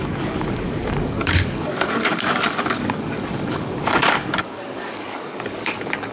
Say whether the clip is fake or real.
fake